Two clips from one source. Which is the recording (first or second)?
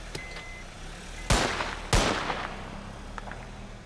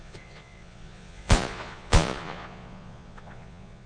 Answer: first